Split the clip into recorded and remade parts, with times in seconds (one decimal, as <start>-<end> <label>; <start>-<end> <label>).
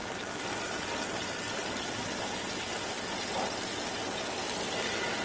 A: 0.0-5.2 recorded